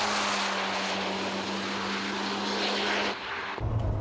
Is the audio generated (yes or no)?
no